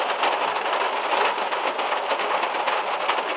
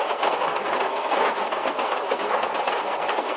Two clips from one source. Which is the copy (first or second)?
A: second